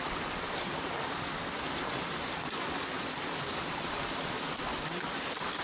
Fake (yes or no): no